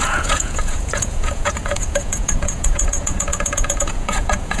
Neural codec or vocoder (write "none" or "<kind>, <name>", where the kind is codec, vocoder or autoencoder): vocoder, Vocos